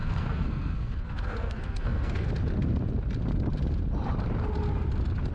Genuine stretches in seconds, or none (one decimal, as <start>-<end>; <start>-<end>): 2.3-5.3